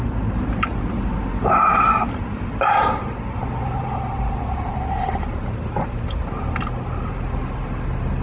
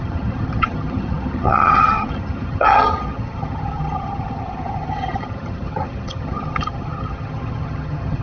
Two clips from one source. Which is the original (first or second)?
first